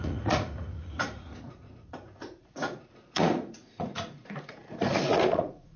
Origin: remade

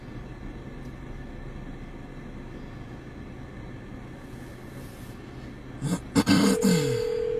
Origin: recorded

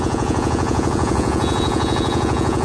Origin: remade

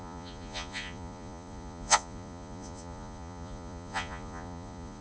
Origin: remade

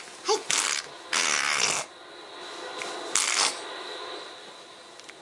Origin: recorded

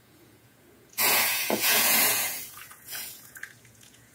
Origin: remade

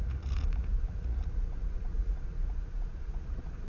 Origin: remade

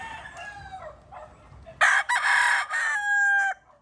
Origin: recorded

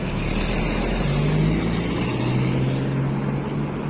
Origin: recorded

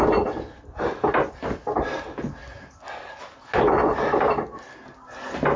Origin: recorded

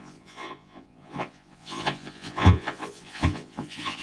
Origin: remade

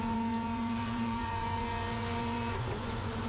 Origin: remade